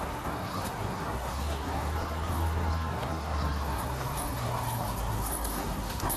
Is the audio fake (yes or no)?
yes